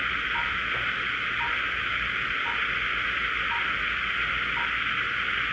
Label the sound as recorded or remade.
recorded